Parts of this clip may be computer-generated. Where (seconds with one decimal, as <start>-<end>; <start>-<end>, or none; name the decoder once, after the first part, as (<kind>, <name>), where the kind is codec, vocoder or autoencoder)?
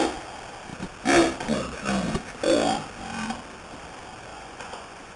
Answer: 4.3-5.2 (vocoder, Vocos)